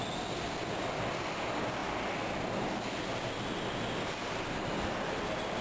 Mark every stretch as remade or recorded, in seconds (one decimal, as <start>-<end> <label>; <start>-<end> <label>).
0.0-5.6 recorded